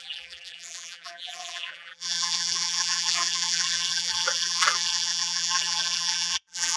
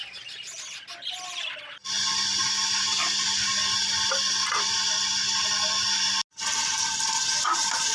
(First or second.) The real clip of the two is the second